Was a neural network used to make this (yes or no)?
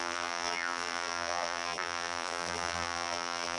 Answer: yes